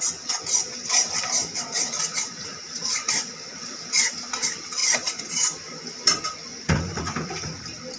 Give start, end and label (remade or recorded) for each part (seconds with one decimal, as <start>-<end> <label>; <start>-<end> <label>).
0.0-1.4 recorded; 1.4-3.8 remade; 3.8-4.8 recorded; 4.8-5.3 remade; 5.3-6.5 recorded; 6.5-7.6 remade; 7.6-8.0 recorded